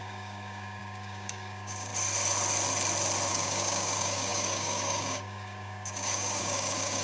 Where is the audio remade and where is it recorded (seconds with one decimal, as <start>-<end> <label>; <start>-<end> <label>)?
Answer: 0.0-1.9 remade; 1.9-3.3 recorded; 3.3-7.0 remade